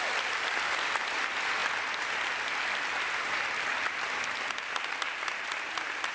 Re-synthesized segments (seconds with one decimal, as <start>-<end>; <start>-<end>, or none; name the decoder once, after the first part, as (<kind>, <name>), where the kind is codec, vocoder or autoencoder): none